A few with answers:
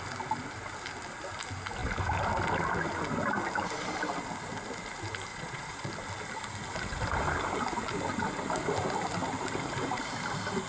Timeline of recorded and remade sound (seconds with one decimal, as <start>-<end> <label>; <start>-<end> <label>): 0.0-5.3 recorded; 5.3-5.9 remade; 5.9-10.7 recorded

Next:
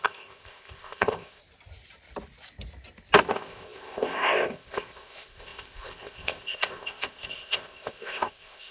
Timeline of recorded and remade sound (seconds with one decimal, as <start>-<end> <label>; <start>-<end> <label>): 0.0-1.4 remade; 1.4-3.3 recorded; 3.3-8.7 remade

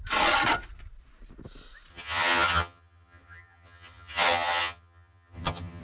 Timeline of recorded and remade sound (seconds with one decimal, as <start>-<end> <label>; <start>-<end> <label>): 0.0-1.9 recorded; 1.9-5.8 remade